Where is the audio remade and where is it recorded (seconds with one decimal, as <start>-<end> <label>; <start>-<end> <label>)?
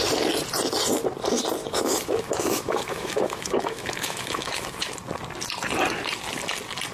0.0-1.6 recorded; 1.6-4.9 remade; 4.9-6.9 recorded